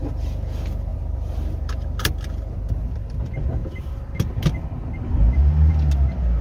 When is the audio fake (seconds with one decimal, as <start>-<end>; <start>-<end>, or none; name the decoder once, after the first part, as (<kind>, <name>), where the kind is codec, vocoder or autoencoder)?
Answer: 0.9-3.2 (vocoder, BigVGAN v2)